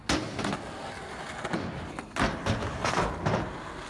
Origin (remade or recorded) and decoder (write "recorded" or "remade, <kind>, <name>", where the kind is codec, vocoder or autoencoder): recorded